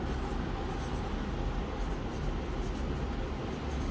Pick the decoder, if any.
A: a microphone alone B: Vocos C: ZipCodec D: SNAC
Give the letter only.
A